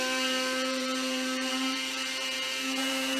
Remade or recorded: remade